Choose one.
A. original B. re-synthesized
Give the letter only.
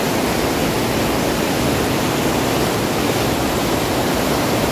A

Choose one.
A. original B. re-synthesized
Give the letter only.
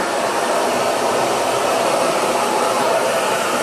B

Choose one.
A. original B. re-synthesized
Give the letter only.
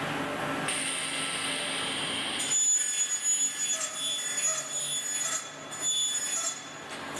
A